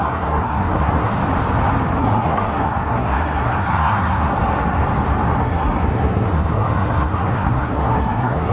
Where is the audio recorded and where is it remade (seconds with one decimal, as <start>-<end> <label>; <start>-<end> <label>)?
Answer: 0.0-1.2 remade; 1.2-2.0 recorded; 2.0-4.3 remade; 4.3-5.4 recorded; 5.4-8.5 remade